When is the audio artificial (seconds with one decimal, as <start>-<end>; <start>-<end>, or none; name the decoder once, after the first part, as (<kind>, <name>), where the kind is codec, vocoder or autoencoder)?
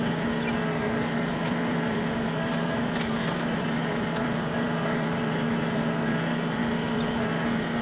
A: 1.4-5.9 (vocoder, BigVGAN v2); 6.6-7.3